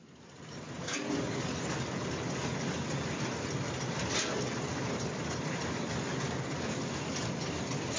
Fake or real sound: real